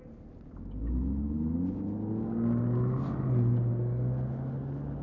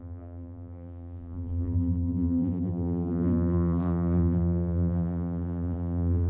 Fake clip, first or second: second